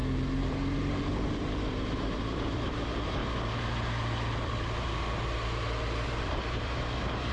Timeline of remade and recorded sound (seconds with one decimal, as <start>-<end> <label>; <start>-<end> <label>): 0.0-3.2 remade; 3.2-6.2 recorded; 6.2-7.3 remade